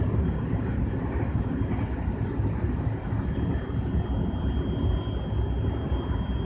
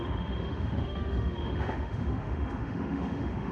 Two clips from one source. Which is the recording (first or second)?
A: first